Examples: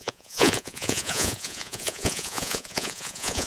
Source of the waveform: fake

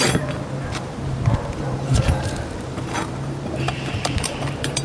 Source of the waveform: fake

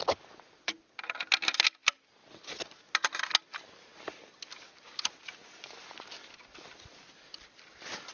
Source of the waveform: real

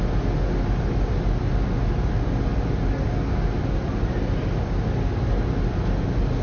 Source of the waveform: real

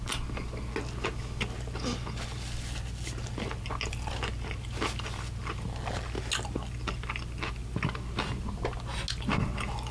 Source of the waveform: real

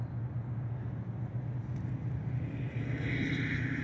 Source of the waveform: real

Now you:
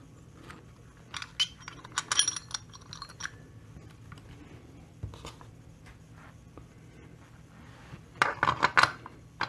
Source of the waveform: real